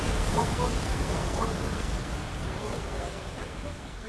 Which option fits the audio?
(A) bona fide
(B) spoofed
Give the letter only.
B